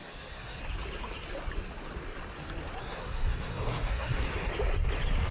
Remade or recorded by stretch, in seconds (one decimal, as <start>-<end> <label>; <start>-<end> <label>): 0.0-0.6 remade; 0.6-2.8 recorded; 2.8-4.5 remade; 4.5-5.3 recorded